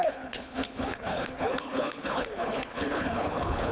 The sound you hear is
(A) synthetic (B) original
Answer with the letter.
A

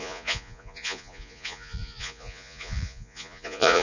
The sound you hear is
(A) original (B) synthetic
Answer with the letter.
B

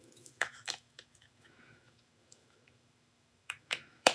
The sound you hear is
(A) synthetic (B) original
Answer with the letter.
A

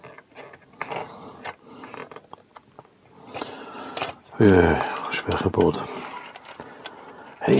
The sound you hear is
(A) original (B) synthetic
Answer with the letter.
A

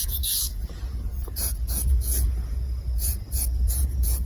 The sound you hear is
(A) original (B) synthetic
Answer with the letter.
B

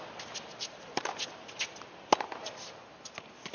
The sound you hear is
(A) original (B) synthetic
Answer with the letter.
A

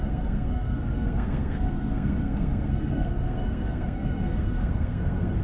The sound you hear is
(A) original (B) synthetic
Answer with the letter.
B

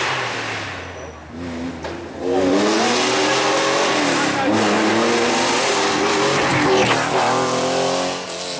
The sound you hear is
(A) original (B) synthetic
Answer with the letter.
A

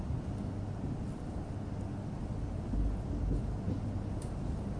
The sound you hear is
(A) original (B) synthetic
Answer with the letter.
A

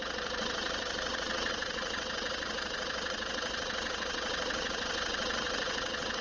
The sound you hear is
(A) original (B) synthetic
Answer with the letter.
B